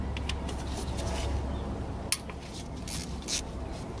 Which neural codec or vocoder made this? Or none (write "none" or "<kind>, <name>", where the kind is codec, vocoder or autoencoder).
none